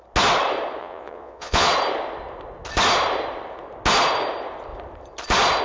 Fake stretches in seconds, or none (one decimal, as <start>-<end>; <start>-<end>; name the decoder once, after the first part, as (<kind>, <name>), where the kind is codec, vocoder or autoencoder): 0.8-1.7 (vocoder, Vocos)